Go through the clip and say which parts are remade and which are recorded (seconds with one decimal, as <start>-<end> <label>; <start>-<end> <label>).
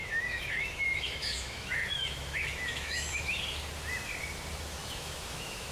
0.0-3.4 remade; 3.4-4.8 recorded; 4.8-5.7 remade